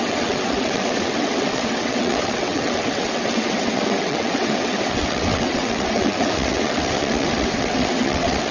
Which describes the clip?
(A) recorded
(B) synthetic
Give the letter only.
B